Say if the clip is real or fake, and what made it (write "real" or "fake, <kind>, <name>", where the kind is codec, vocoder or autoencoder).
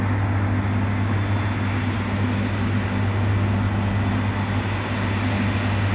real